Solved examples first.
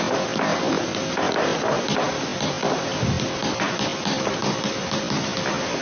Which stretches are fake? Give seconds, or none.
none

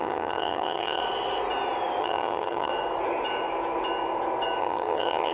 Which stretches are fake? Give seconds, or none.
0.0-1.0 (vocoder, HiFi-GAN); 2.0-2.7; 4.6-5.3

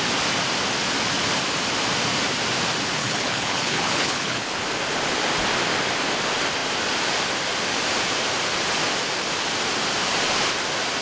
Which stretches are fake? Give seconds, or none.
3.0-4.6 (codec, HILCodec)